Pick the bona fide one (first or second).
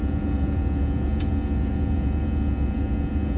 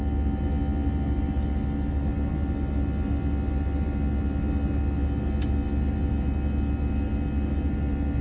second